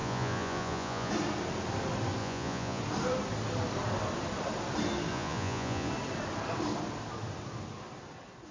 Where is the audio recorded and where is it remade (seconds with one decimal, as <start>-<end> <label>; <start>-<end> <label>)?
0.0-1.1 remade; 1.1-2.2 recorded; 2.2-2.8 remade; 2.8-5.1 recorded; 5.1-5.9 remade; 5.9-8.5 recorded